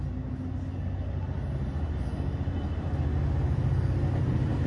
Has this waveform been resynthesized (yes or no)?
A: no